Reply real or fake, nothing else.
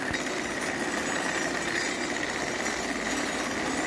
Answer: real